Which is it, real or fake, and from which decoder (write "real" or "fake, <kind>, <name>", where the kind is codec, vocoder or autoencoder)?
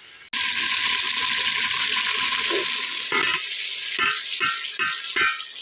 real